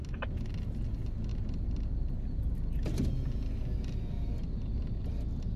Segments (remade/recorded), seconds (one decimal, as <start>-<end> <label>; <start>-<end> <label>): 0.0-5.6 recorded